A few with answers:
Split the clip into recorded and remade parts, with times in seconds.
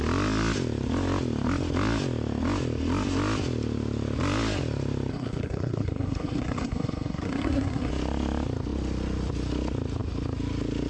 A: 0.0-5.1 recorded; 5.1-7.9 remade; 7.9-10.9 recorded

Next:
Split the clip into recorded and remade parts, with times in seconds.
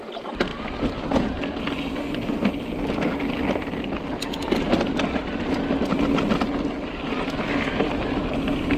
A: 0.0-2.0 recorded; 2.0-2.5 remade; 2.5-8.8 recorded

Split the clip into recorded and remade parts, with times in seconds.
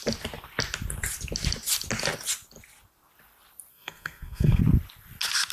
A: 0.0-3.7 recorded; 3.7-4.6 remade; 4.6-5.5 recorded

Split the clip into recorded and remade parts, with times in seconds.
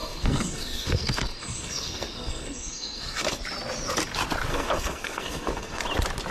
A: 0.0-3.4 remade; 3.4-4.5 recorded; 4.5-5.8 remade; 5.8-6.3 recorded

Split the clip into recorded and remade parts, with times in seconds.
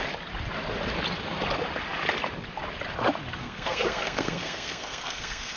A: 0.0-3.4 recorded; 3.4-5.6 remade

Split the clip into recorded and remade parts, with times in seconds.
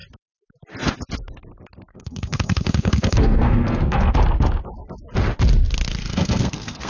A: 0.0-1.9 recorded; 1.9-4.1 remade; 4.1-6.0 recorded; 6.0-6.9 remade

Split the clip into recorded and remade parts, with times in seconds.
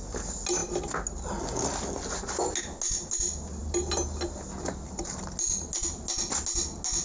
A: 0.0-7.0 recorded